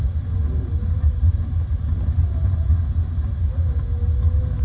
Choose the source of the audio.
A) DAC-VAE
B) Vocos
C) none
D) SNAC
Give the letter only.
C